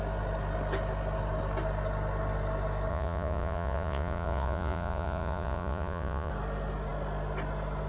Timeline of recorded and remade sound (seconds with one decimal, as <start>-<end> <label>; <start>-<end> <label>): 0.0-2.9 recorded; 2.9-6.3 remade; 6.3-7.9 recorded